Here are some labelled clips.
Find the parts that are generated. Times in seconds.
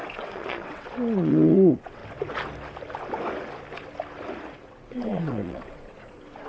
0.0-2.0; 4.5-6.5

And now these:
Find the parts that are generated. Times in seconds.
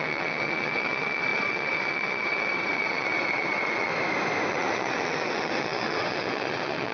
0.0-3.9; 4.5-6.9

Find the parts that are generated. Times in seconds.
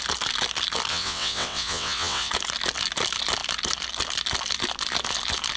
0.9-2.3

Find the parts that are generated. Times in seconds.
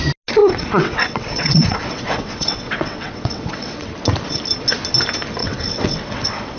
0.4-3.9; 5.4-6.6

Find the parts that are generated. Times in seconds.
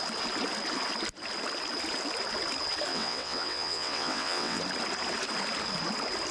2.9-4.6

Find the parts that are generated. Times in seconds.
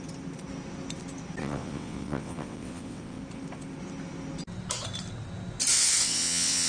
1.4-3.2; 5.7-6.7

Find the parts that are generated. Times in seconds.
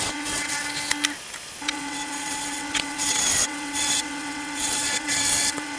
0.0-0.6; 1.6-5.8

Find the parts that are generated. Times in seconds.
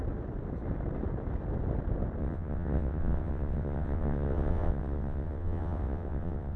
2.2-6.6